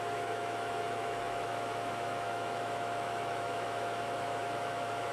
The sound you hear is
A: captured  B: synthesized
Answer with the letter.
B